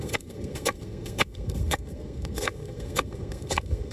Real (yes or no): no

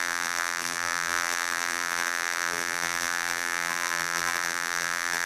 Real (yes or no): no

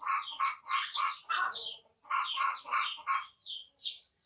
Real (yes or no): yes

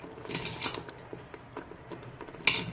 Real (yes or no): yes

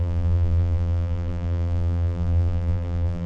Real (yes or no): no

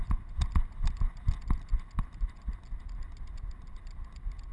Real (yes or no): yes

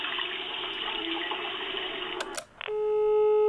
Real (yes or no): yes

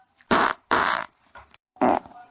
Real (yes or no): no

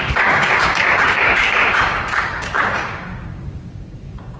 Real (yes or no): no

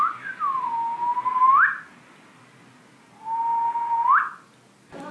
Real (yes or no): yes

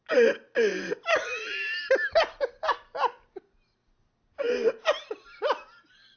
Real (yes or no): yes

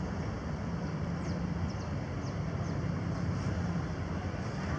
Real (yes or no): yes